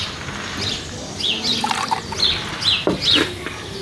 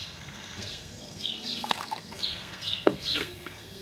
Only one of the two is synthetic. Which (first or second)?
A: second